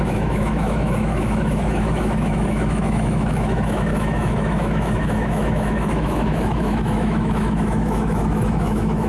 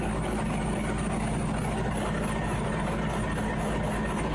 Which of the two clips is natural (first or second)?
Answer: second